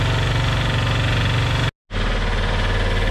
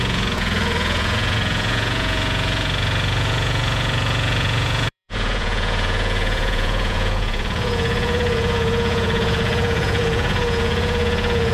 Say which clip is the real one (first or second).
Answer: first